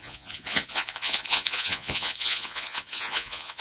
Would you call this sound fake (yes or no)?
yes